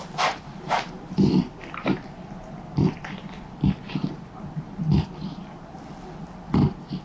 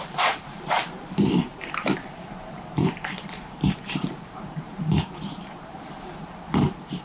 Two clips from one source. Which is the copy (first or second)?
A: second